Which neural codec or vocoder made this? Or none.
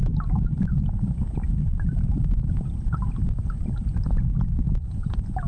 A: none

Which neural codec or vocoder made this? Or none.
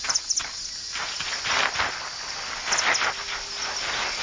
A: none